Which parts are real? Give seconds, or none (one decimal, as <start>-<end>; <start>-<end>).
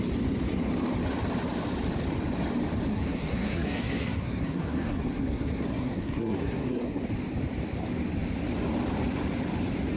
0.0-2.9; 7.0-10.0